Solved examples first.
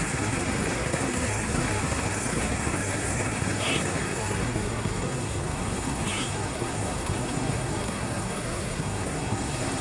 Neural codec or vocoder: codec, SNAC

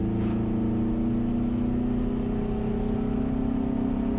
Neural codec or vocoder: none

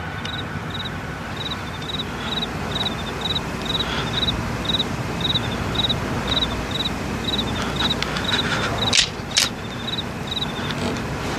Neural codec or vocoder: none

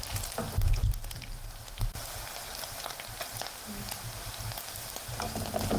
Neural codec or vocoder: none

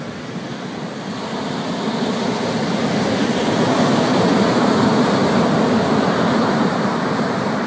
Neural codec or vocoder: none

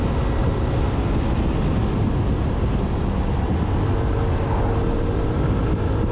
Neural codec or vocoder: none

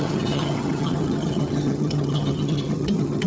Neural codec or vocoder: vocoder, HiFi-GAN